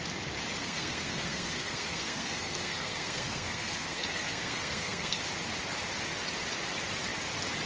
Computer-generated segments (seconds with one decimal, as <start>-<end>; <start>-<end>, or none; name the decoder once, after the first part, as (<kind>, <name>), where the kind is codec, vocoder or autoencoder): 0.6-5.2 (codec, SNAC)